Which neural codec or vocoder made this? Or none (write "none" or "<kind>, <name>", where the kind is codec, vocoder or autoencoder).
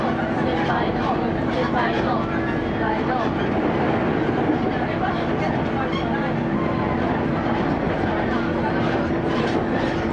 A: none